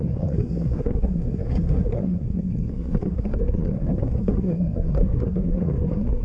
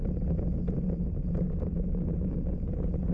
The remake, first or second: first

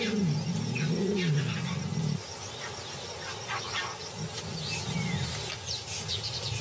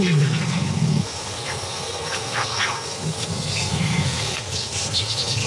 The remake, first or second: second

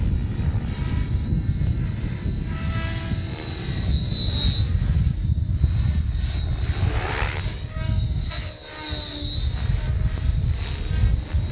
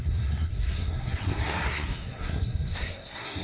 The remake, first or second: second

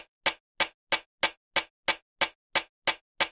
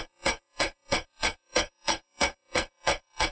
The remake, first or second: second